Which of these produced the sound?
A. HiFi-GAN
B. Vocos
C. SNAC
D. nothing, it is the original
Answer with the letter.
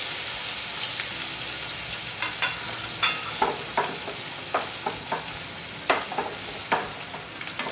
D